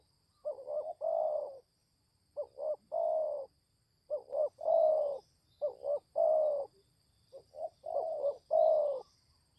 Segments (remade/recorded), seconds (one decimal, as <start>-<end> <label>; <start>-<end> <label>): 0.0-9.6 remade